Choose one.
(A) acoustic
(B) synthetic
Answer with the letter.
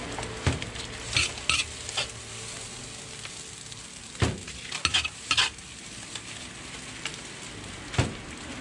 A